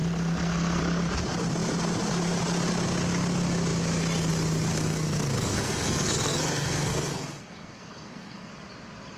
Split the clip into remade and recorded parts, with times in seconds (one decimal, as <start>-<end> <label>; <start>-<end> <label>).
0.0-0.8 remade; 0.8-4.7 recorded; 4.7-8.5 remade; 8.5-9.2 recorded